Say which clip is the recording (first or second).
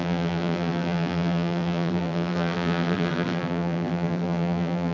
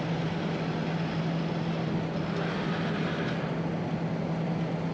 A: second